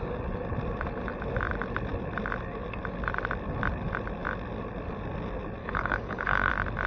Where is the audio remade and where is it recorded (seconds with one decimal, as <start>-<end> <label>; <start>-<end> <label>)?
0.0-5.6 recorded; 5.6-6.5 remade; 6.5-6.9 recorded